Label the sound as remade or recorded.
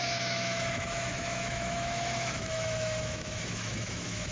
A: remade